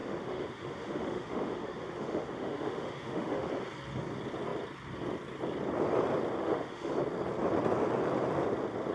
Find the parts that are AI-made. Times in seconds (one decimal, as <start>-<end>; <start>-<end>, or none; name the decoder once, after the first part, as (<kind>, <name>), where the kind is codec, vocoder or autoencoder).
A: 0.0-3.5 (autoencoder, DAC-VAE); 6.4-6.9

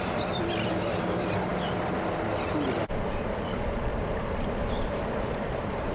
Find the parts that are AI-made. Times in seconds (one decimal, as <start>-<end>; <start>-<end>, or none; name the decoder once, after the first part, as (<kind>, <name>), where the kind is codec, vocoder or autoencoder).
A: 3.9-5.9 (vocoder, BigVGAN v2)

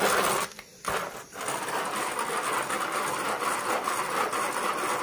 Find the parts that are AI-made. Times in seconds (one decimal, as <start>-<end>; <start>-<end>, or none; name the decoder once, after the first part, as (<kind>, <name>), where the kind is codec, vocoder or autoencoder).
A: none

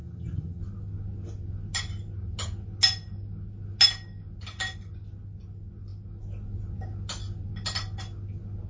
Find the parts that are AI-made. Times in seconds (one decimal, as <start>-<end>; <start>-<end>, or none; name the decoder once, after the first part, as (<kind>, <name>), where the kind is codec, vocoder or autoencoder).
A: 0.0-0.6 (vocoder, HiFi-GAN)

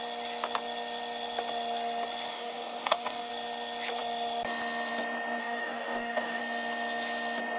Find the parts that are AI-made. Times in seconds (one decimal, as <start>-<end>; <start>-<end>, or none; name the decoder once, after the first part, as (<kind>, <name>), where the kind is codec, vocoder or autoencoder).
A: 2.3-3.3 (codec, DAC); 5.4-6.4

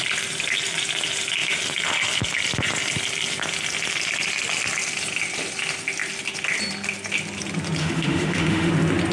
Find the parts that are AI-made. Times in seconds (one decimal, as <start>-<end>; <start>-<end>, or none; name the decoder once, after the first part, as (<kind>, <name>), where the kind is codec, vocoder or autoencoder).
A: 7.8-8.7 (autoencoder, DAC-VAE)

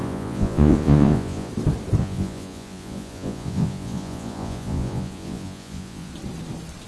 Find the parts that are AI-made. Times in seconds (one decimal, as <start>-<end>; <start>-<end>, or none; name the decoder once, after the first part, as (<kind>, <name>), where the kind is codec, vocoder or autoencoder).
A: 0.0-1.5 (vocoder, Vocos); 2.0-6.1

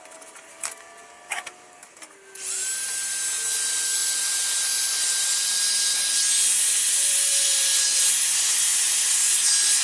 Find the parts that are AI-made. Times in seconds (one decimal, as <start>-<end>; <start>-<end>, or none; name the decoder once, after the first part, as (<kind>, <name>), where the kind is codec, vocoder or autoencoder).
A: 0.5-2.0 (codec, DAC)